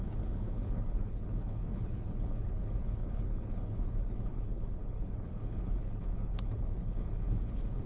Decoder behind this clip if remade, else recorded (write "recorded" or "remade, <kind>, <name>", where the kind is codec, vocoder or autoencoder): remade, codec, HILCodec